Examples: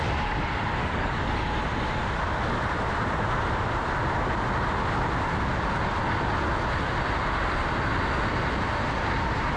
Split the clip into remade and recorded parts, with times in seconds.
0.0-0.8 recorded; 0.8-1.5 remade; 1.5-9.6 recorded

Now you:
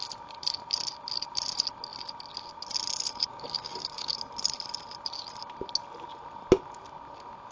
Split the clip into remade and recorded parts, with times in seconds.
0.0-3.3 recorded; 3.3-4.2 remade; 4.2-7.5 recorded

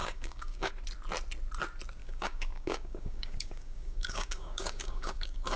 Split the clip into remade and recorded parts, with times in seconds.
0.0-0.7 remade; 0.7-2.0 recorded; 2.0-5.6 remade